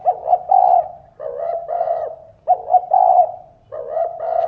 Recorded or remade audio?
recorded